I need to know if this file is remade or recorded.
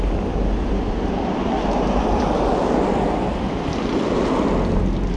recorded